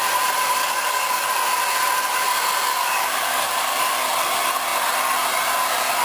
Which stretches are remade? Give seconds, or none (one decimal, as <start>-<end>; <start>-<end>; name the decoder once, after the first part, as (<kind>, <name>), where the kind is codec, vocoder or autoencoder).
0.6-1.3 (codec, DAC); 2.7-3.7